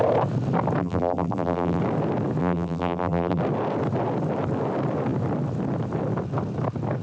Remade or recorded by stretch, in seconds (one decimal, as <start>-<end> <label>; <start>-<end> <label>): 0.0-0.8 recorded; 0.8-1.8 remade; 1.8-2.4 recorded; 2.4-3.4 remade; 3.4-7.0 recorded

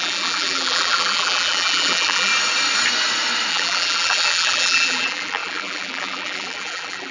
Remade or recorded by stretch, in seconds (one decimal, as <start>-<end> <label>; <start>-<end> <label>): 0.0-2.3 remade; 2.3-3.5 recorded; 3.5-7.1 remade

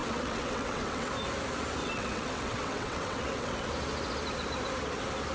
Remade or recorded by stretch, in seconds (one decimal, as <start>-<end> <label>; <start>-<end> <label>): 0.0-1.1 remade; 1.1-1.8 recorded; 1.8-3.7 remade; 3.7-5.3 recorded

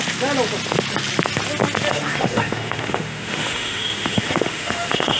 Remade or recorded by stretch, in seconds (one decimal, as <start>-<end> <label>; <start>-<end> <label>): 0.0-1.9 recorded; 1.9-5.2 remade

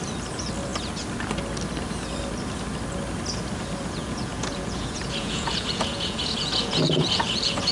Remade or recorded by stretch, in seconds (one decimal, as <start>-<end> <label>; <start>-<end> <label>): 0.0-4.0 recorded; 4.0-7.7 remade

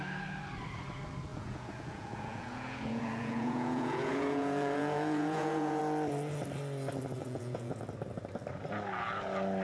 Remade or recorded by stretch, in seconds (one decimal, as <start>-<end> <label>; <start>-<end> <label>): 0.0-1.3 recorded; 1.3-5.8 remade; 5.8-7.2 recorded; 7.2-7.9 remade; 7.9-9.6 recorded

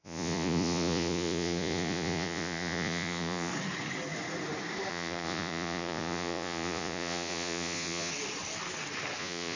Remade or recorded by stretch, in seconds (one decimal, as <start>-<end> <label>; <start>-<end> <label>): 0.0-3.5 remade; 3.5-4.9 recorded; 4.9-8.1 remade; 8.1-9.2 recorded; 9.2-9.6 remade

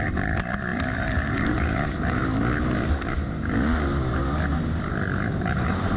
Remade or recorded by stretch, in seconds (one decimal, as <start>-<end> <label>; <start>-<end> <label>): 0.0-2.2 remade; 2.2-5.3 recorded; 5.3-6.0 remade